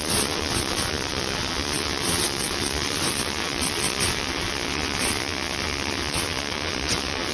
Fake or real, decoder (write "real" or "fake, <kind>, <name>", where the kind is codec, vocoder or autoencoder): fake, vocoder, WaveNeXt